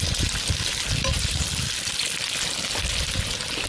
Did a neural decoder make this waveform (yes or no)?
no